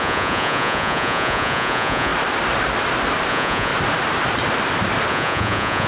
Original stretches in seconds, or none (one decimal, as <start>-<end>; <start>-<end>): 2.1-3.3; 3.7-5.1